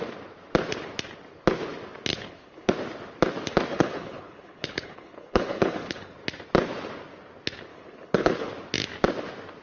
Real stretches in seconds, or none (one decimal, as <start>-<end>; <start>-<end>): 0.0-2.1; 2.7-3.7; 6.2-7.7; 8.5-9.6